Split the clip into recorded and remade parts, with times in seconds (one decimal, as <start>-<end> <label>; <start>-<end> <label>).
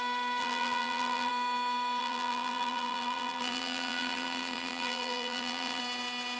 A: 0.0-0.4 recorded; 0.4-1.3 remade; 1.3-2.0 recorded; 2.0-5.8 remade; 5.8-6.4 recorded